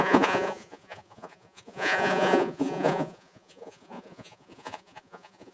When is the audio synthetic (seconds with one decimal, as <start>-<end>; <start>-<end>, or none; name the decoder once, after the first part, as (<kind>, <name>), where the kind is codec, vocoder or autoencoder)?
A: 0.0-5.5 (vocoder, Vocos)